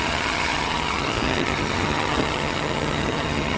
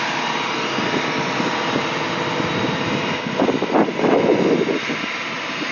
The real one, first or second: second